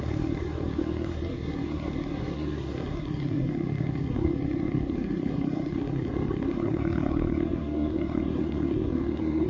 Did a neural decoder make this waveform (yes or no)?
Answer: yes